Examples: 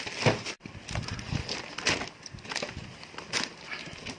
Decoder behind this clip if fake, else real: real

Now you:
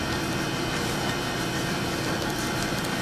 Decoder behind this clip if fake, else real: real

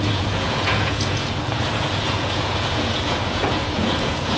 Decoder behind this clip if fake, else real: fake, vocoder, Vocos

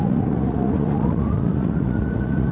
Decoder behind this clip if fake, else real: fake, vocoder, Vocos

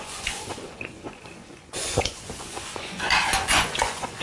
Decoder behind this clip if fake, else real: fake, vocoder, Vocos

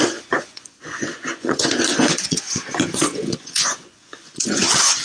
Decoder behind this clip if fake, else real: fake, vocoder, Vocos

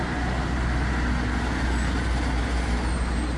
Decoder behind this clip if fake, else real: real